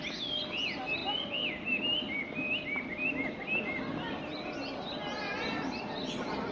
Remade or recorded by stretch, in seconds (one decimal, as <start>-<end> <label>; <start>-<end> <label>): 0.0-6.5 recorded